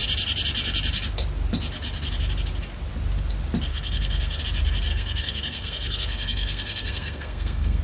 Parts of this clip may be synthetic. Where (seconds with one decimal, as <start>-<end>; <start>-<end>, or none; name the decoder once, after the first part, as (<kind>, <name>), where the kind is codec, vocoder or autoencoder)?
3.7-4.4 (codec, SNAC); 4.9-7.8